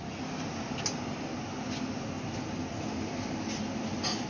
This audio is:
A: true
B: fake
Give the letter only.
A